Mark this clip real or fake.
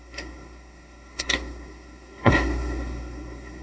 fake